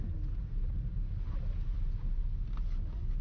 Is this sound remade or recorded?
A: recorded